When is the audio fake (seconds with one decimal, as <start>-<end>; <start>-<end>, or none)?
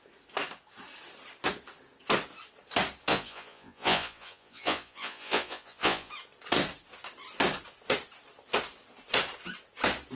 3.1-6.1